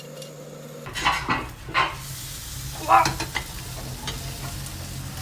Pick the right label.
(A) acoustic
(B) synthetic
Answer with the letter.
A